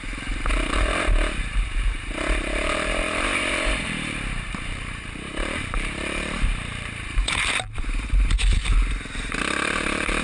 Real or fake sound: fake